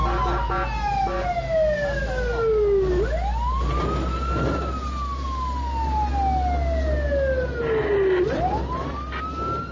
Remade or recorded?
recorded